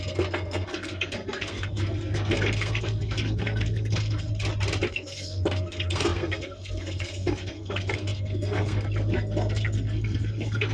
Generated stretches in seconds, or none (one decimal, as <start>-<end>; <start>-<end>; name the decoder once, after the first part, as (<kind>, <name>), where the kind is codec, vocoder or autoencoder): 0.0-4.3 (codec, SNAC); 4.9-10.7